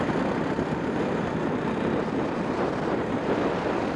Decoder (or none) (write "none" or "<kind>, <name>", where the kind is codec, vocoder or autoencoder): none